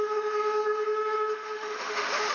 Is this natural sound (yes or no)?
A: no